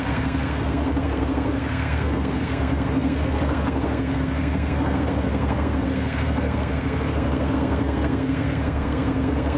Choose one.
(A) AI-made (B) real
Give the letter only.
A